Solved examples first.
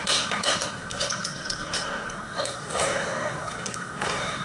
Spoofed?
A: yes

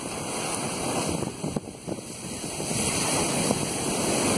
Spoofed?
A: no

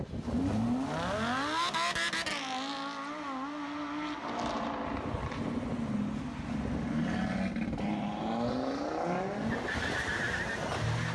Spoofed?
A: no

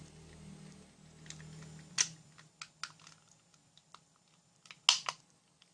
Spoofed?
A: no